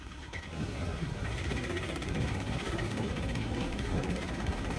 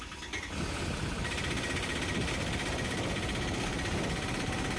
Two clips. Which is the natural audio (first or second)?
second